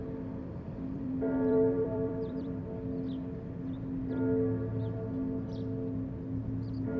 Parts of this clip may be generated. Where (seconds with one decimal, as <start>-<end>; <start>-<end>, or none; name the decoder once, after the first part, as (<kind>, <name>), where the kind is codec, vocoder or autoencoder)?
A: 0.5-2.6 (vocoder, BigVGAN v2)